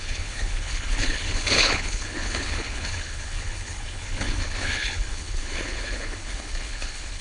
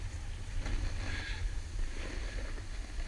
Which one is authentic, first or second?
second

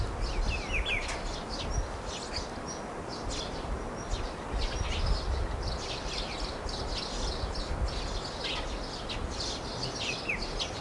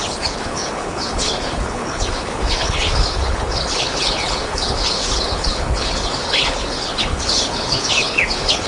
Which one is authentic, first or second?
first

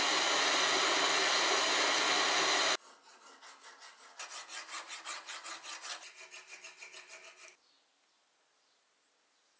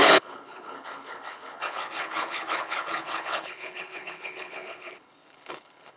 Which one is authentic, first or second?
first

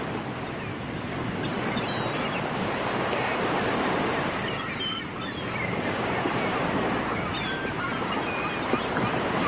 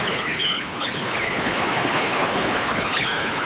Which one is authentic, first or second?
first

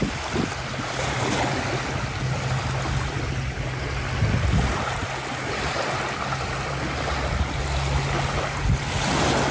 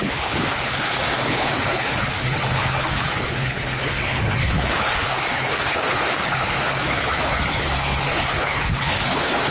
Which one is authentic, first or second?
first